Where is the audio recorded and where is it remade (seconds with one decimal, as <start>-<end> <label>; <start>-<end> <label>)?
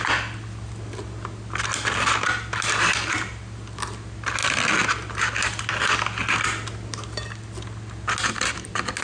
0.0-9.0 recorded